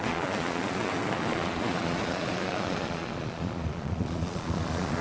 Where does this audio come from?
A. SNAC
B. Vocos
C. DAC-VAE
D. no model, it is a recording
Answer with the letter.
B